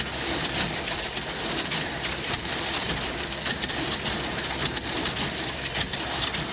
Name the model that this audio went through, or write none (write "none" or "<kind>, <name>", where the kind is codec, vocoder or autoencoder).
vocoder, BigVGAN v2